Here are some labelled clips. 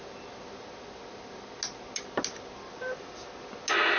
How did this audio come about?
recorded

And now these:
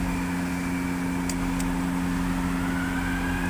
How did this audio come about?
recorded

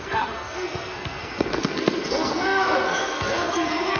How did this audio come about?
remade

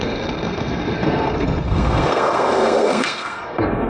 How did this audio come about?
remade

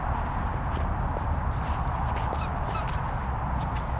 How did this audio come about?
recorded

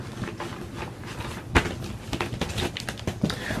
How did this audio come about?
recorded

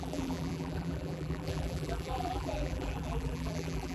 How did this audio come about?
remade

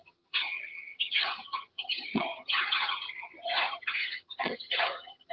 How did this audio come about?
remade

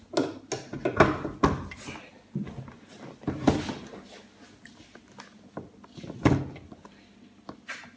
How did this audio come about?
recorded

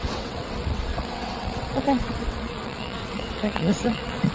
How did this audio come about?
remade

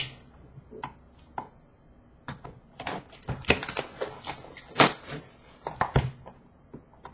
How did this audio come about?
recorded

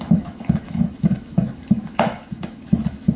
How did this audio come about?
remade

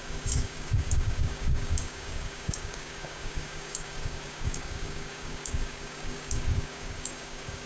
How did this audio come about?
remade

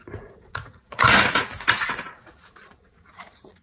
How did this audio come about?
remade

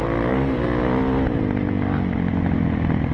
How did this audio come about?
recorded